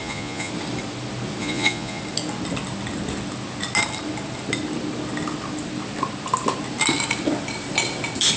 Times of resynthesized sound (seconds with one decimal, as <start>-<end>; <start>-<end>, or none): 0.0-0.5; 1.4-2.0